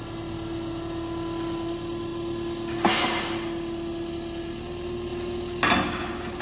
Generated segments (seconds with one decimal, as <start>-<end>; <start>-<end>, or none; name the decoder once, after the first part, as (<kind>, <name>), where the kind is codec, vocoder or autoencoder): none